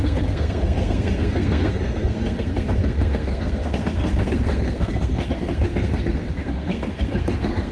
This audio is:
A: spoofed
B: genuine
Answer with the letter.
A